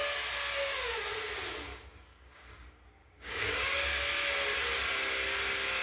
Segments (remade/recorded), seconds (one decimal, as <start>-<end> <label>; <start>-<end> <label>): 0.0-1.7 recorded; 1.7-2.5 remade; 2.5-3.0 recorded; 3.0-4.0 remade; 4.0-5.8 recorded